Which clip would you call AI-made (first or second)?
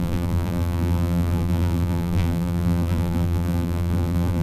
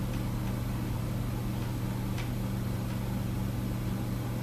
first